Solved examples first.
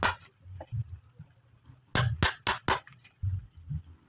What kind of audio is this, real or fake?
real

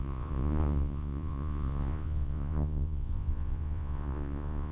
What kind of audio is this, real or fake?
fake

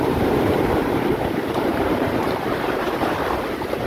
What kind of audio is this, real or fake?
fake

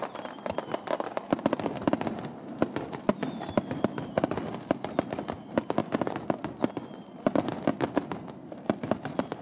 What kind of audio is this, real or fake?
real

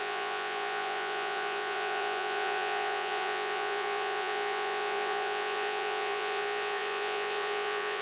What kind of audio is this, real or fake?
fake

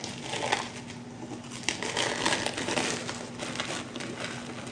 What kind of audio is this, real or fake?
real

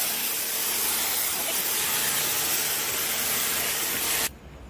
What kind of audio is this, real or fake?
real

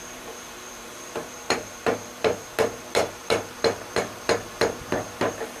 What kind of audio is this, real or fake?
fake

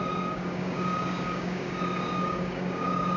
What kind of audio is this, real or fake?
fake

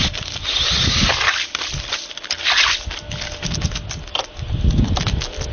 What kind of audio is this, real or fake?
real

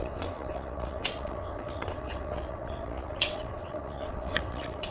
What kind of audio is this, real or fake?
fake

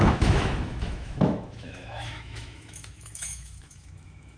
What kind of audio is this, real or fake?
fake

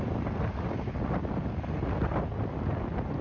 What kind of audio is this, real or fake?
real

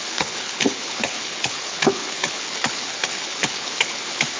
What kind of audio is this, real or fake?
fake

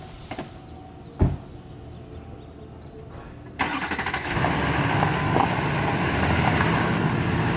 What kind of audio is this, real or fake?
real